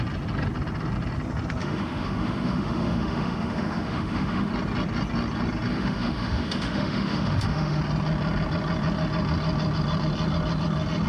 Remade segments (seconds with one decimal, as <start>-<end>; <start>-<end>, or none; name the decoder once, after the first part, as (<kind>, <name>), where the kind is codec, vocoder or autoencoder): 1.6-4.5 (autoencoder, DAC-VAE); 5.7-7.8